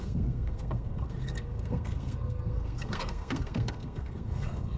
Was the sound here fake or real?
fake